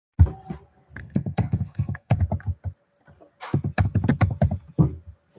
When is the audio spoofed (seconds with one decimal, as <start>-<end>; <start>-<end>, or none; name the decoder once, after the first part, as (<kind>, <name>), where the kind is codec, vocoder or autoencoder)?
1.0-2.2 (codec, SNAC)